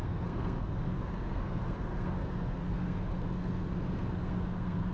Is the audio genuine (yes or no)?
no